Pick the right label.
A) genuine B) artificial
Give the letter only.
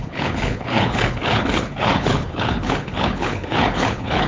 B